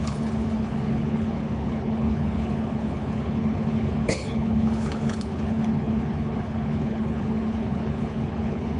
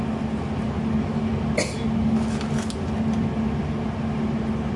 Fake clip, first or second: first